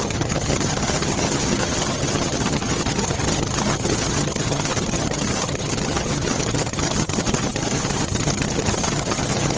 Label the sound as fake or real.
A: fake